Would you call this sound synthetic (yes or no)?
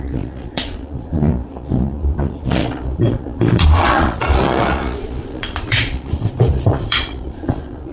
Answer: yes